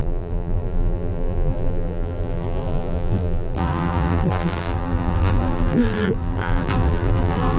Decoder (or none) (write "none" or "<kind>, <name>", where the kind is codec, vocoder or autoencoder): vocoder, BigVGAN v2